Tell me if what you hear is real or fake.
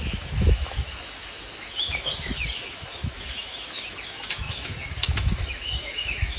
fake